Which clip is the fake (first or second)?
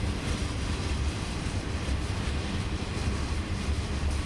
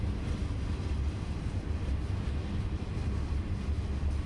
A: first